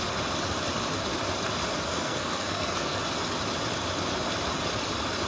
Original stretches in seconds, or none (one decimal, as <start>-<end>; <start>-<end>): 0.0-1.9; 3.0-5.3